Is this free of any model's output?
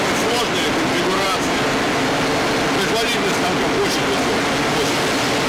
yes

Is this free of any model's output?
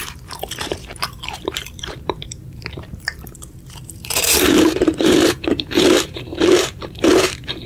no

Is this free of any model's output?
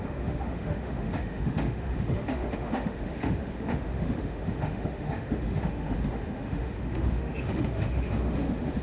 no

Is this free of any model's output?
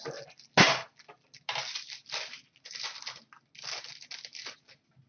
yes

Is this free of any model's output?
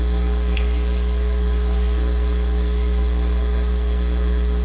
no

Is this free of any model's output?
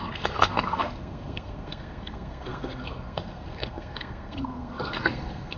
no